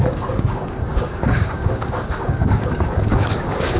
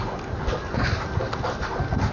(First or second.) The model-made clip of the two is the first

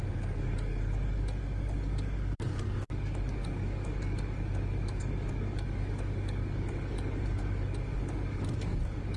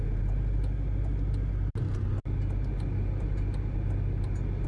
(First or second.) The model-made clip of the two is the first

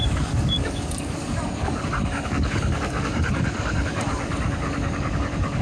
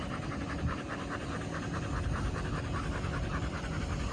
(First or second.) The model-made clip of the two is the first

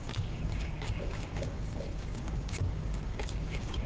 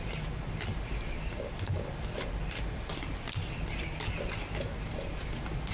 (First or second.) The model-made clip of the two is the first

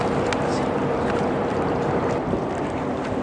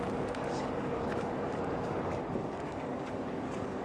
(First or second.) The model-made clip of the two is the second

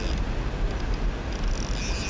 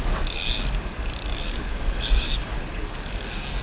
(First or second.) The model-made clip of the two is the second